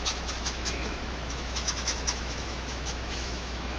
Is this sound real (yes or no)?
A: no